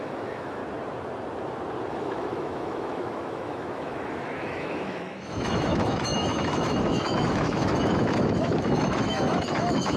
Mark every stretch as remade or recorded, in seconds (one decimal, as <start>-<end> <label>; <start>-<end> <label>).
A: 0.0-0.6 remade; 0.6-1.9 recorded; 1.9-10.0 remade